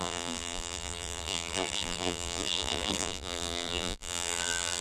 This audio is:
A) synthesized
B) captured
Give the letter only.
A